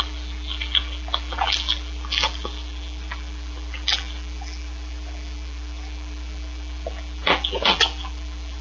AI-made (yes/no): yes